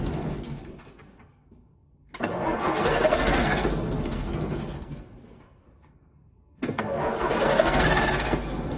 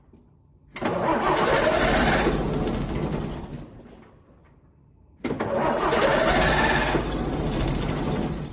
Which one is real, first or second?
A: second